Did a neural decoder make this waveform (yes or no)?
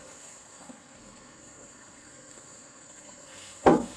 yes